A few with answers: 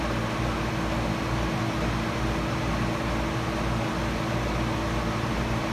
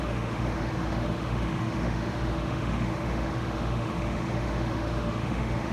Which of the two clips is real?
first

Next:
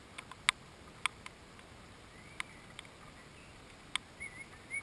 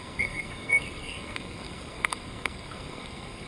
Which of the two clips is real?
first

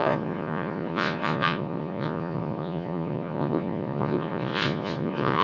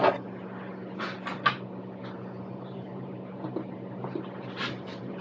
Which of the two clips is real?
second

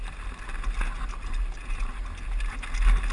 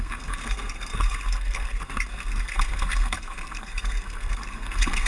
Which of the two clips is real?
first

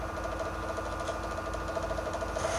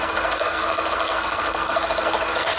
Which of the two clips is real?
first